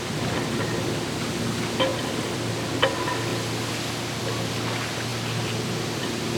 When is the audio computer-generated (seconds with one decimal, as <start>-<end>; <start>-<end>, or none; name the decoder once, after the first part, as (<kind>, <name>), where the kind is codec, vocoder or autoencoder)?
1.9-2.5 (vocoder, BigVGAN v2); 5.1-6.4